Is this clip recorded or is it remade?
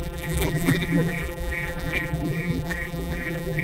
remade